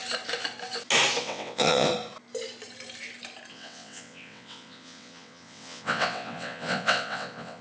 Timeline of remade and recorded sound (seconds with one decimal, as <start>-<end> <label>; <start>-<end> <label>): 0.0-1.2 recorded; 1.2-1.9 remade; 1.9-3.5 recorded; 3.5-7.6 remade